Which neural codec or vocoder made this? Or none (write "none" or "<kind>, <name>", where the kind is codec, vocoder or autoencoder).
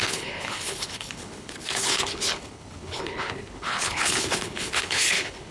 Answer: codec, HILCodec